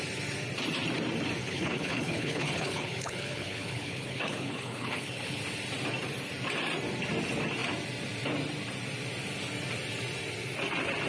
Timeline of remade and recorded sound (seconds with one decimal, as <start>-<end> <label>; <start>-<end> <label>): 0.0-1.4 recorded; 1.4-5.4 remade; 5.4-11.1 recorded